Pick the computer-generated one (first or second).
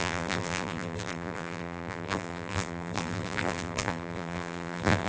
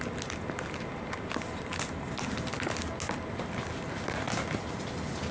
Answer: first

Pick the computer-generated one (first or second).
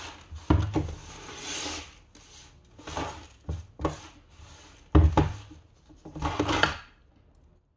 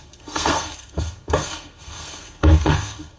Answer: second